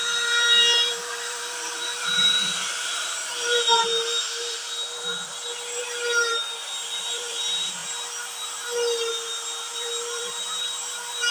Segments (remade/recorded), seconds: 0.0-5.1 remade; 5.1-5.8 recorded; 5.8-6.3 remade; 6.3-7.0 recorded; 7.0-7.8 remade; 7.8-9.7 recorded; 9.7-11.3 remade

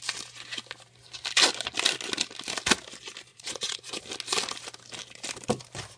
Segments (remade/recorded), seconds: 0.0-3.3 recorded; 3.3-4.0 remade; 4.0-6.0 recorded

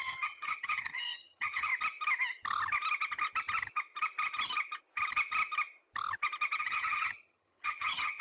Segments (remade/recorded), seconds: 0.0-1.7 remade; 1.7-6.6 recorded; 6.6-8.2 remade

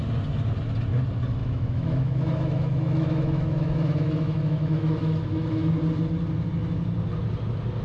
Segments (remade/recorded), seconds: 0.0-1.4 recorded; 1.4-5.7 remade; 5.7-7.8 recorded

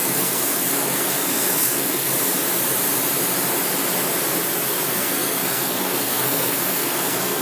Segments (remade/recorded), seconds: 0.0-2.1 remade; 2.1-4.9 recorded; 4.9-7.4 remade

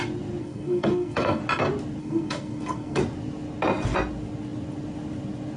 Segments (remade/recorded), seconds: 0.0-0.4 recorded; 0.4-1.4 remade; 1.4-2.0 recorded; 2.0-3.0 remade; 3.0-5.6 recorded

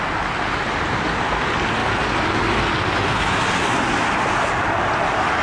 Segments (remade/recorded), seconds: 0.0-5.4 recorded